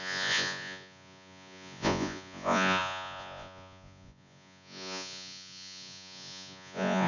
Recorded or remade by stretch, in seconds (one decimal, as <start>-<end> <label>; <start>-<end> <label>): 0.0-7.1 remade